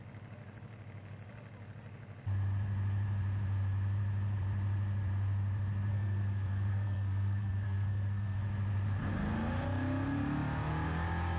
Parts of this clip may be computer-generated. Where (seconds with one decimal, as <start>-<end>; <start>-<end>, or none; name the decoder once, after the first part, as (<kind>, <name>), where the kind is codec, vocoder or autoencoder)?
5.9-8.4 (codec, SNAC)